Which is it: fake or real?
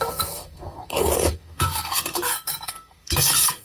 fake